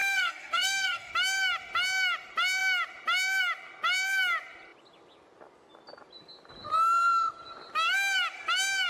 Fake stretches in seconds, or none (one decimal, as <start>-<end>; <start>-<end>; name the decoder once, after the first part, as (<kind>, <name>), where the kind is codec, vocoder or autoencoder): 0.0-1.1 (codec, SNAC)